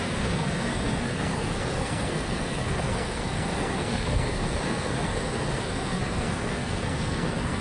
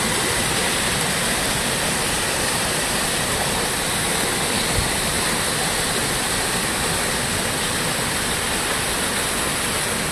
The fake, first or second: first